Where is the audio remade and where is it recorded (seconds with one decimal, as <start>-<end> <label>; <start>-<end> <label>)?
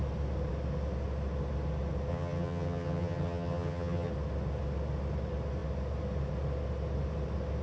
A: 0.0-2.1 recorded; 2.1-4.1 remade; 4.1-7.6 recorded